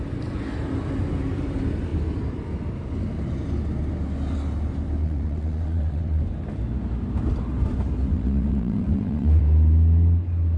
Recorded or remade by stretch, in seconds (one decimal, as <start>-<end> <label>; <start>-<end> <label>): 0.0-5.0 recorded; 5.0-6.2 remade; 6.2-8.1 recorded; 8.1-9.4 remade; 9.4-10.6 recorded